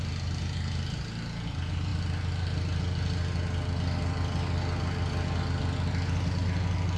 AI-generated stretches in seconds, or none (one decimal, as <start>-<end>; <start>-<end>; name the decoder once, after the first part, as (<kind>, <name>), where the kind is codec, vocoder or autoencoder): none